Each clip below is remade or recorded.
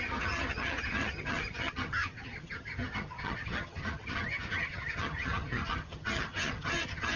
remade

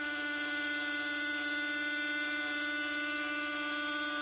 recorded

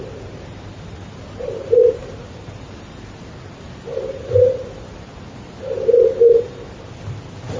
recorded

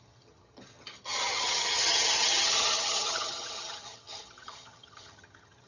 remade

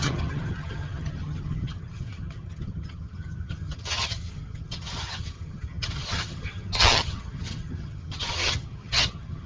remade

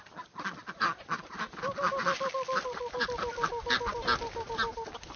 recorded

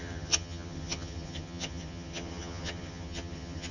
remade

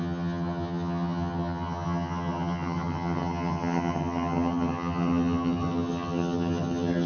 remade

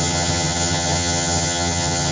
remade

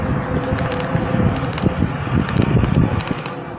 recorded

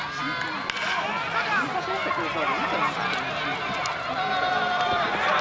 recorded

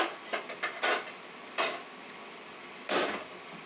recorded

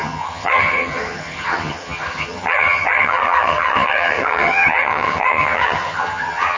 remade